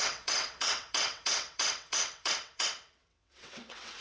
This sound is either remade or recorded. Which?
remade